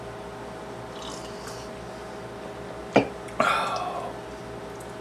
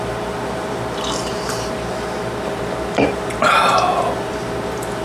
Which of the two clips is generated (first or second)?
second